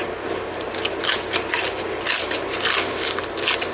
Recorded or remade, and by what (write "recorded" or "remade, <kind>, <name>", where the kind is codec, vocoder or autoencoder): recorded